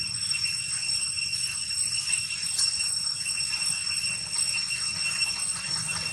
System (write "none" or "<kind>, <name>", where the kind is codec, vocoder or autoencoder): vocoder, Vocos